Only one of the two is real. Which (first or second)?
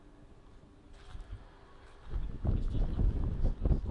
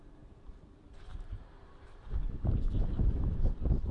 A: first